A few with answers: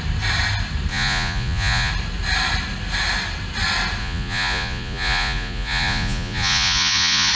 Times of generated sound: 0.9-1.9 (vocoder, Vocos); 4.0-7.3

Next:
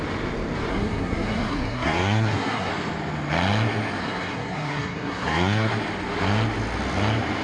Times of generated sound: 0.7-2.7 (codec, SNAC); 4.0-5.7

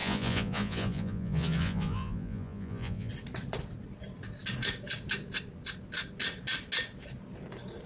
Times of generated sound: 0.0-3.1 (vocoder, Vocos)